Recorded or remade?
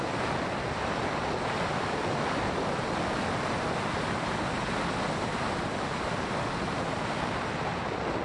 recorded